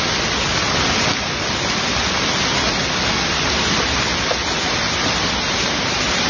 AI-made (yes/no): no